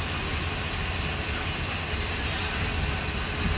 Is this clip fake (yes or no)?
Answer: no